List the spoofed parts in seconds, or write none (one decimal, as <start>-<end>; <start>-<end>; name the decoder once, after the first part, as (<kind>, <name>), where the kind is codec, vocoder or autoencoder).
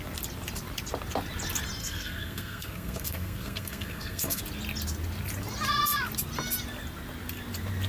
1.8-4.4 (codec, SNAC)